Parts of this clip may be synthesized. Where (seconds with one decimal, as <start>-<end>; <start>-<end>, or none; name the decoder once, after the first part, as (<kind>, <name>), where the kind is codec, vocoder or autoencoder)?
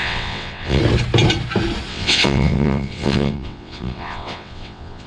0.0-0.8 (vocoder, WaveNeXt); 1.9-5.1